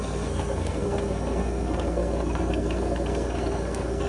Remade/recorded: remade